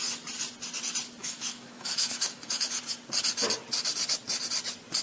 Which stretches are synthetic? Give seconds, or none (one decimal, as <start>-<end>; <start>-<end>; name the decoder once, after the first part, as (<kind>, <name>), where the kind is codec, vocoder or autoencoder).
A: 1.2-2.8 (autoencoder, DAC-VAE)